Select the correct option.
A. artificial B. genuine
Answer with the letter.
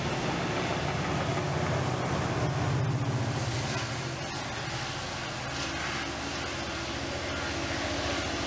B